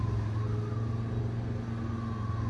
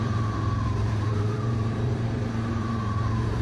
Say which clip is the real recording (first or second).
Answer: first